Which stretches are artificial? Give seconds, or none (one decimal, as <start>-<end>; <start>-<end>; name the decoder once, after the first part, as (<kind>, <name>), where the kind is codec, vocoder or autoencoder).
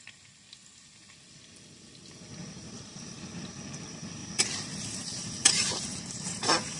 2.4-3.2 (vocoder, BigVGAN v2); 4.2-6.8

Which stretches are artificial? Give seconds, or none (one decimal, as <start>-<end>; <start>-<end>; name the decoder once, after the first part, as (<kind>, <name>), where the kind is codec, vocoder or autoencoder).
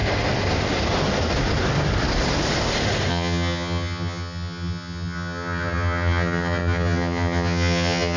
3.1-8.2 (vocoder, HiFi-GAN)